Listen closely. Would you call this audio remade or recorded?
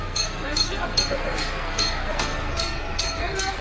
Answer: remade